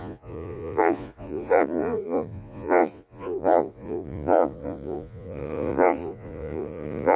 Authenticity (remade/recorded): remade